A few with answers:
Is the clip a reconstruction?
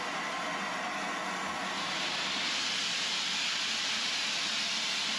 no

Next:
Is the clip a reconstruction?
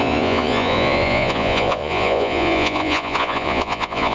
yes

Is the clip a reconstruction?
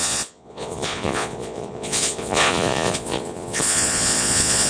yes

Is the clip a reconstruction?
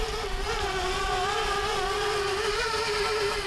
no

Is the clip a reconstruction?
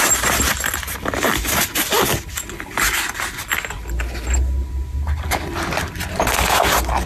no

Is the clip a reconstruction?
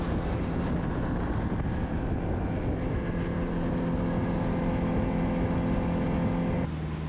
no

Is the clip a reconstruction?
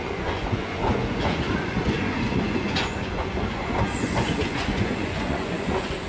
yes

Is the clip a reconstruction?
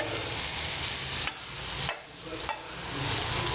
no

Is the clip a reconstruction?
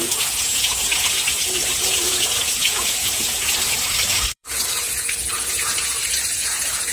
yes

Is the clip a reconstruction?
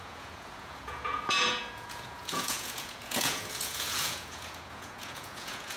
yes